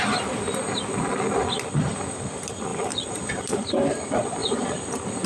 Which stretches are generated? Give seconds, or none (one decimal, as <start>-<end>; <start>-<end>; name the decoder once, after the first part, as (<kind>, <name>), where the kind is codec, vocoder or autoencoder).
none